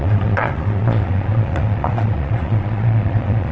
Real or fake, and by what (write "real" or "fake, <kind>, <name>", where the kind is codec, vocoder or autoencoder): fake, vocoder, Vocos